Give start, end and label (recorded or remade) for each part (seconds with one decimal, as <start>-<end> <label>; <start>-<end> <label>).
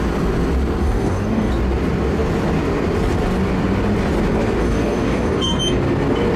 0.0-0.8 recorded; 0.8-1.5 remade; 1.5-4.6 recorded; 4.6-5.6 remade; 5.6-6.4 recorded